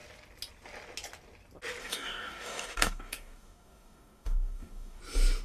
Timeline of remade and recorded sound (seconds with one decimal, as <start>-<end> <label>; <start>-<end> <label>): 0.0-1.8 recorded; 1.8-5.0 remade; 5.0-5.4 recorded